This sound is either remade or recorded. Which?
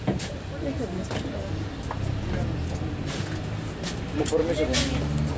recorded